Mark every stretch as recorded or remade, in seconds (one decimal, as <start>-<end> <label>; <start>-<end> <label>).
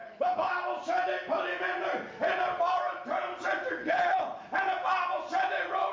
0.0-0.5 remade; 0.5-3.8 recorded; 3.8-4.4 remade; 4.4-5.9 recorded